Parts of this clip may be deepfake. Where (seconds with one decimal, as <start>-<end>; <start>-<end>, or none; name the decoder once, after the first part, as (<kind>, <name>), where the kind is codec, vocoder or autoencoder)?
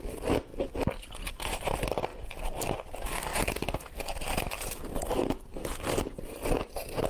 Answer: 0.0-0.5 (vocoder, BigVGAN v2); 1.3-2.1; 2.7-3.3; 4.4-7.1